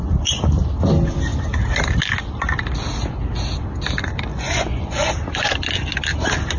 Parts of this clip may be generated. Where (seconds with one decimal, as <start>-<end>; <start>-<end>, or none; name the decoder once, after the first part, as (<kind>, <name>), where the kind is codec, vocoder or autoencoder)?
4.3-5.1 (vocoder, Vocos)

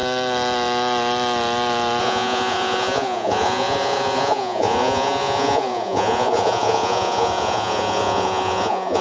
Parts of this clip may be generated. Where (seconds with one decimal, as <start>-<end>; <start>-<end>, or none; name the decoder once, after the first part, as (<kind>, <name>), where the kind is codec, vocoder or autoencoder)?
2.0-9.0 (vocoder, Vocos)

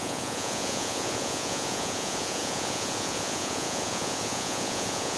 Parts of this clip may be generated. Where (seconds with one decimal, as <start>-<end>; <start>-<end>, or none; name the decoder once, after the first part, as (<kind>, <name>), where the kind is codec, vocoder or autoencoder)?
0.0-5.2 (vocoder, Vocos)

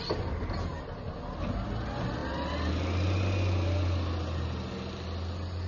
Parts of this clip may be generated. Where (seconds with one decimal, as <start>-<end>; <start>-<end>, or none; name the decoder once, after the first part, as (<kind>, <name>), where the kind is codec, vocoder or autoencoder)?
none

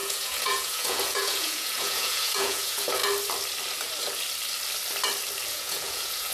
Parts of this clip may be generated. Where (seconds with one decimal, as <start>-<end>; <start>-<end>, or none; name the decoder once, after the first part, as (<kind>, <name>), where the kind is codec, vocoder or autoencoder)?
0.0-3.0 (vocoder, Vocos); 5.5-6.3